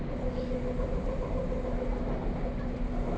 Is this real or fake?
real